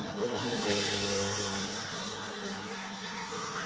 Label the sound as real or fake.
fake